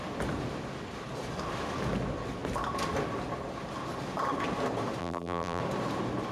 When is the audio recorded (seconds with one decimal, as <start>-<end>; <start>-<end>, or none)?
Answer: 0.0-5.0; 5.6-6.3